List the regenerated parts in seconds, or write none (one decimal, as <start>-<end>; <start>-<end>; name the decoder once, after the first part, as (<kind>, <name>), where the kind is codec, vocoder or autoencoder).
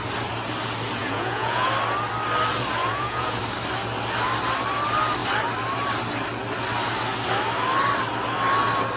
1.0-1.7 (vocoder, Vocos); 2.8-3.4